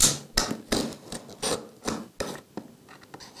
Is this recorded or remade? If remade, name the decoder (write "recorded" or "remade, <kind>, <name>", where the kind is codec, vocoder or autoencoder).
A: recorded